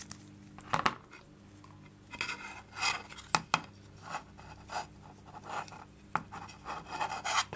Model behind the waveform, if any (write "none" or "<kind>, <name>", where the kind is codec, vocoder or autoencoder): none